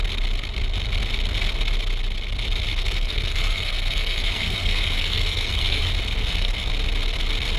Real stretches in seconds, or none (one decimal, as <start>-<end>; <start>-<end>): 0.0-2.7; 5.8-6.2; 6.7-7.6